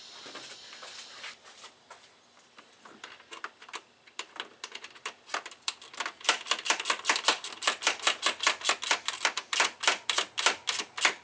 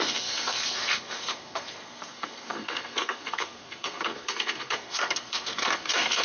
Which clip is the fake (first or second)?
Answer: second